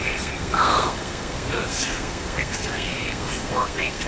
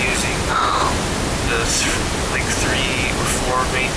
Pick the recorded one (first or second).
second